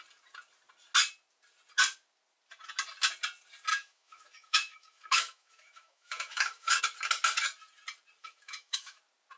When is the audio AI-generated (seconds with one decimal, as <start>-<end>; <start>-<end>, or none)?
3.7-6.8; 8.2-9.0